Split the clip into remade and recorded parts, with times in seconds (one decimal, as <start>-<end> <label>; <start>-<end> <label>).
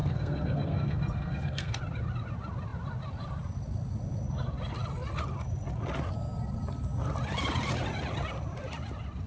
0.0-1.8 remade; 1.8-9.3 recorded